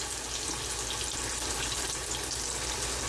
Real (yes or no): yes